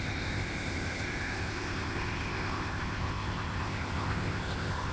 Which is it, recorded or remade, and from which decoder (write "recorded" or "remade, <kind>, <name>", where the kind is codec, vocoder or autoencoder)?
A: remade, codec, ZipCodec